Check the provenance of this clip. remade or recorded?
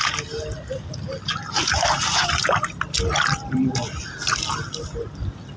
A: recorded